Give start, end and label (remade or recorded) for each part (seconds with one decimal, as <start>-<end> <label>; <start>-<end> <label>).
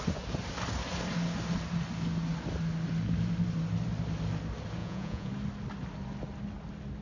0.0-4.8 recorded; 4.8-5.3 remade; 5.3-7.0 recorded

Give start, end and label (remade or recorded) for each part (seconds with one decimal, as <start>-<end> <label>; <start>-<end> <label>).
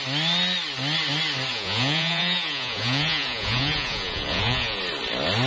0.0-1.5 recorded; 1.5-4.8 remade; 4.8-5.5 recorded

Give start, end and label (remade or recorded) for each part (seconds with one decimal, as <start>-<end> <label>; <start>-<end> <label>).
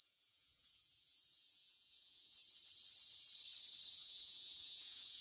0.0-2.4 remade; 2.4-3.9 recorded; 3.9-5.2 remade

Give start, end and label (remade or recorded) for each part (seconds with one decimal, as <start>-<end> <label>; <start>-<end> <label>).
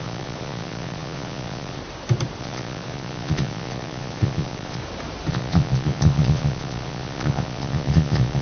0.0-1.8 remade; 1.8-2.4 recorded; 2.4-4.8 remade; 4.8-5.3 recorded; 5.3-8.4 remade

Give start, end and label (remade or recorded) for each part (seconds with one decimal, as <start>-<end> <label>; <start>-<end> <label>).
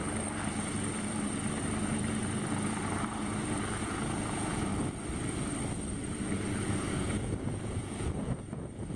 0.0-3.8 recorded; 3.8-4.7 remade; 4.7-6.9 recorded; 6.9-9.0 remade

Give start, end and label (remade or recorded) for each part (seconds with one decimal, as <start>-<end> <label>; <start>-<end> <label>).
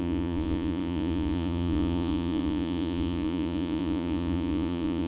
0.0-5.1 remade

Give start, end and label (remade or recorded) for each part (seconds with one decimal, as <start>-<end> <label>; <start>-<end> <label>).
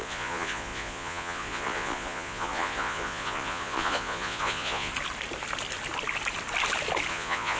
0.0-4.9 remade; 4.9-7.1 recorded; 7.1-7.6 remade